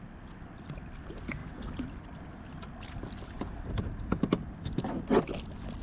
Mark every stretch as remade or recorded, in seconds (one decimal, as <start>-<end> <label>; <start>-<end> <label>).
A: 0.0-5.8 recorded